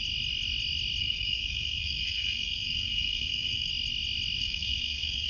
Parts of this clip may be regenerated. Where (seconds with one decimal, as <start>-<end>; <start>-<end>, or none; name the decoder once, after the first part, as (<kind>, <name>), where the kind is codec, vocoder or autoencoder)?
1.0-3.7 (codec, SNAC); 4.4-5.3